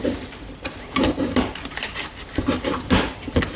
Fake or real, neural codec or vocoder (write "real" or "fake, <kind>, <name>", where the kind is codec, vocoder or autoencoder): real